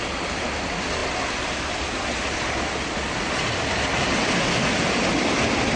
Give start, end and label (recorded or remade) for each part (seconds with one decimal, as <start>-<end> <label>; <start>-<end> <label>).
0.0-5.8 recorded